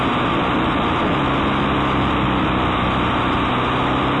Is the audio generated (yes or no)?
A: no